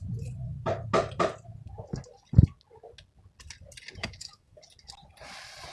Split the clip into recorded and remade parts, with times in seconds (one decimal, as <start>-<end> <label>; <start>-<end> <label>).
0.0-4.0 recorded; 4.0-4.6 remade; 4.6-5.7 recorded